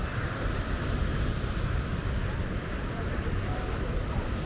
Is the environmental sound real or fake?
real